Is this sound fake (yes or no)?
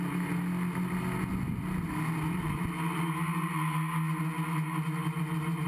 no